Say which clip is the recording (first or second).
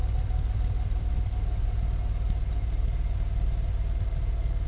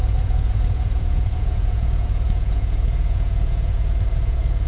first